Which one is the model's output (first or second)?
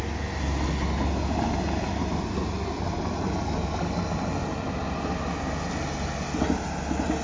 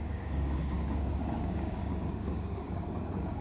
second